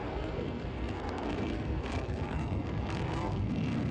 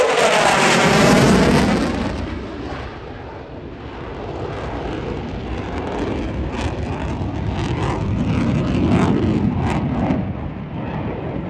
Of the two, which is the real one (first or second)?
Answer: second